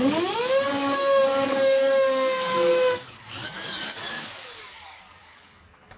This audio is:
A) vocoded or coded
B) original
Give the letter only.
A